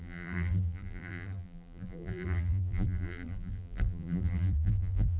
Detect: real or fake fake